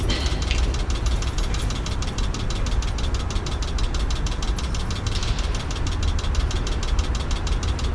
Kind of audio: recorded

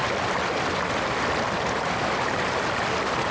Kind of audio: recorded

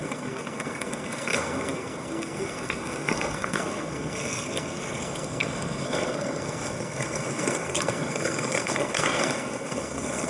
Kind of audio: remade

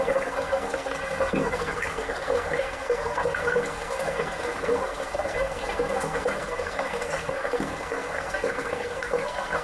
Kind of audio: remade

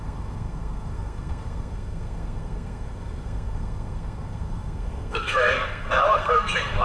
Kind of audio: remade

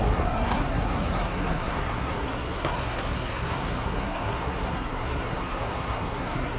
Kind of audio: remade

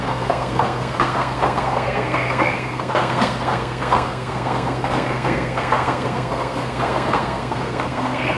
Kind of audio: remade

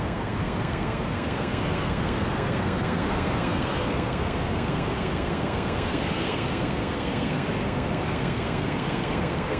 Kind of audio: remade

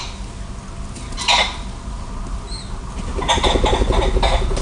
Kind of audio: recorded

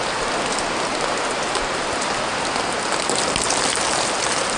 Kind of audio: recorded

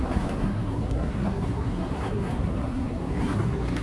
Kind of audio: remade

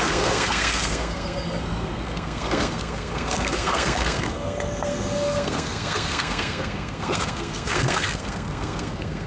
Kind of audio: remade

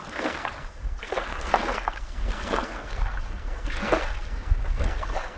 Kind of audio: remade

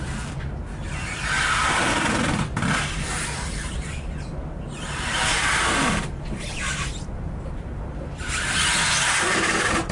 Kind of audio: recorded